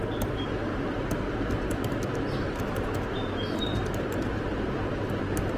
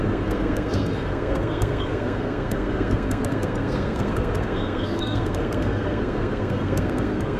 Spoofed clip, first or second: second